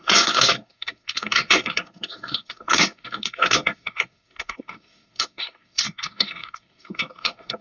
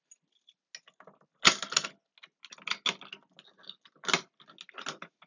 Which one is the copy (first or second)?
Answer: first